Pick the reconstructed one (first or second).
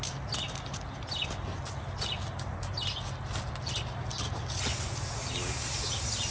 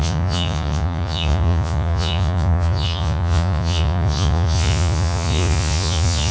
second